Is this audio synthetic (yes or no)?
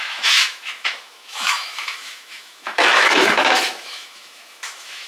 yes